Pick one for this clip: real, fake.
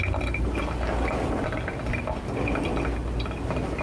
real